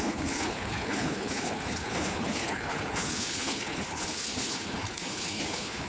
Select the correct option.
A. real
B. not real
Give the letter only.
B